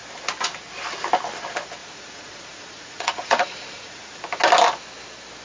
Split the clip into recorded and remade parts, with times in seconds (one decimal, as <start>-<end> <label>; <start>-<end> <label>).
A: 0.0-1.8 recorded; 1.8-4.2 remade; 4.2-5.4 recorded